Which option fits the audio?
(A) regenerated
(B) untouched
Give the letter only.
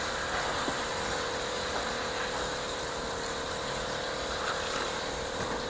B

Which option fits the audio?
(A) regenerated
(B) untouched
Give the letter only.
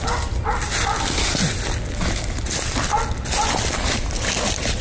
B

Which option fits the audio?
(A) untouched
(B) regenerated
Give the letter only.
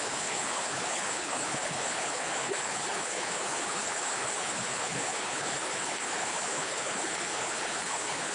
B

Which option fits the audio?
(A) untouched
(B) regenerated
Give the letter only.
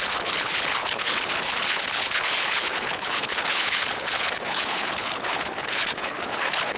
B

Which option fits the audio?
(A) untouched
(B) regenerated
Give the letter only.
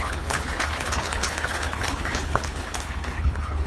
B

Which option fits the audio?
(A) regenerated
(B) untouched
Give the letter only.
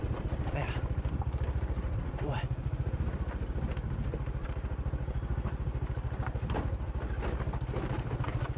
B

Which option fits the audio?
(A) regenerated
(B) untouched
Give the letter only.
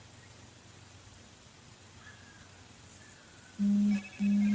B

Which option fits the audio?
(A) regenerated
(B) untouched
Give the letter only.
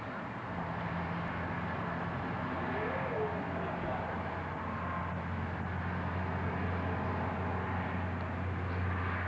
B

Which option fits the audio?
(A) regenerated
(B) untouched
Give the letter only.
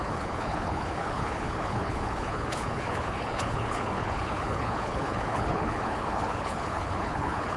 A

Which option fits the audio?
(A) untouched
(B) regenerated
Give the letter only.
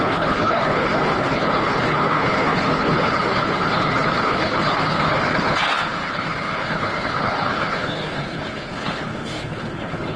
B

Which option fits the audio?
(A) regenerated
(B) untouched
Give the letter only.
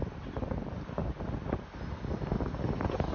B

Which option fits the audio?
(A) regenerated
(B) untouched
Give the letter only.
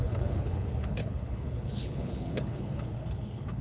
A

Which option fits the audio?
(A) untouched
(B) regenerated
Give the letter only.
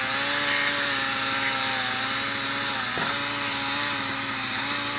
A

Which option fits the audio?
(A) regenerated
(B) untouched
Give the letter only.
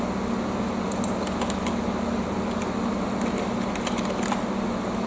B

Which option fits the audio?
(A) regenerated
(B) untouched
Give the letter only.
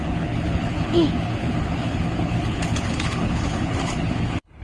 A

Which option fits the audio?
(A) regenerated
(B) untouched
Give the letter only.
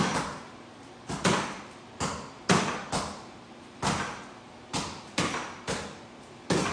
B